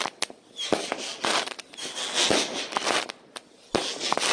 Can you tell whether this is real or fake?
real